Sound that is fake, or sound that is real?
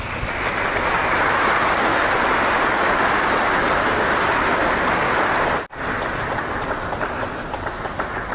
real